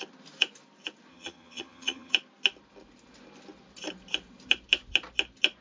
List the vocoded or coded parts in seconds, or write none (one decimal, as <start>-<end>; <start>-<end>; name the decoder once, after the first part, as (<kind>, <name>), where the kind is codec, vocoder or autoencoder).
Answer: 1.1-2.1 (vocoder, HiFi-GAN)